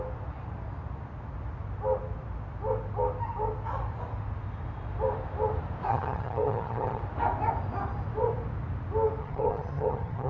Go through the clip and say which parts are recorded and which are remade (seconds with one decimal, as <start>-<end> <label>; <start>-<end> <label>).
0.0-5.9 recorded; 5.9-7.0 remade; 7.0-9.2 recorded; 9.2-10.3 remade